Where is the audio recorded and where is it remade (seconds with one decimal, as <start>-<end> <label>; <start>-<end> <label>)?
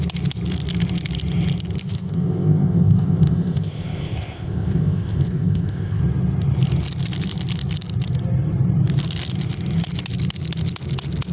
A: 0.0-1.8 recorded; 1.8-6.0 remade; 6.0-11.3 recorded